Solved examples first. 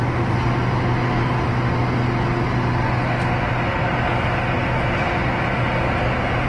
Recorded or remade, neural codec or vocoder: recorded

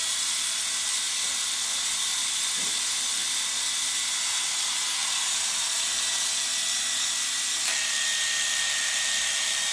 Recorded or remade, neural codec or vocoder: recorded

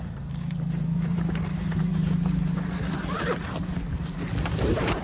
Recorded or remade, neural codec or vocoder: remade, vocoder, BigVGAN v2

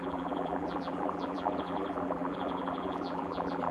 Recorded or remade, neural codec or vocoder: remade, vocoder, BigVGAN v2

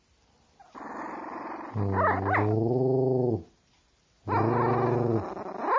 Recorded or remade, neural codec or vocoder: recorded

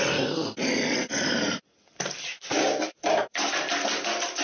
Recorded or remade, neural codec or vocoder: recorded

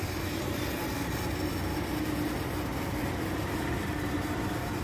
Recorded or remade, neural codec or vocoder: recorded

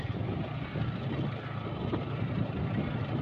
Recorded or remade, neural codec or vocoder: recorded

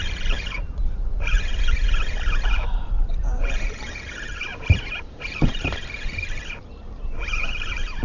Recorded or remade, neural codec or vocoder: remade, vocoder, BigVGAN v2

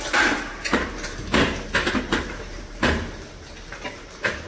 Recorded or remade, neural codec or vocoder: remade, vocoder, BigVGAN v2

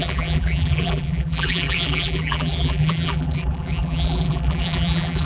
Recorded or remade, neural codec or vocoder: remade, vocoder, BigVGAN v2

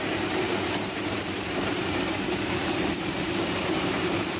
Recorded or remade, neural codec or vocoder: remade, vocoder, BigVGAN v2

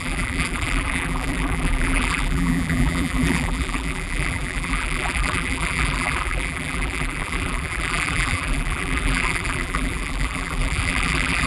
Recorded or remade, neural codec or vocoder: remade, vocoder, BigVGAN v2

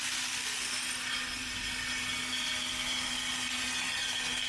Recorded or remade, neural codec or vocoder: recorded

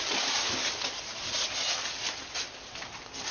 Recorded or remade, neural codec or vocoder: recorded